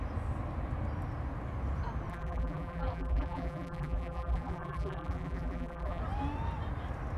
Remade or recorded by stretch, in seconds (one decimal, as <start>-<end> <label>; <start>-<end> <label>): 0.0-2.1 recorded; 2.1-6.0 remade; 6.0-7.2 recorded